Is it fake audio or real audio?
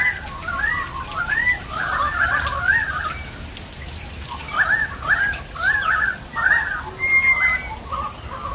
real